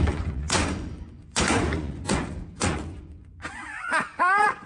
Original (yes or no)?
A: no